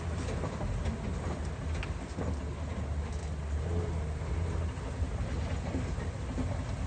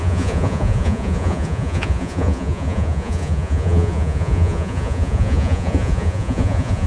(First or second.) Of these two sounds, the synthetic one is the second